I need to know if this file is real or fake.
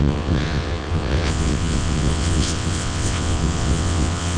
fake